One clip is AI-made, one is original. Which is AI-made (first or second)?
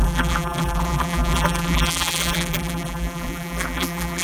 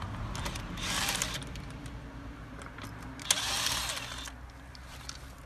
first